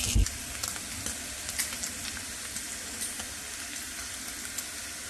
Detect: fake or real real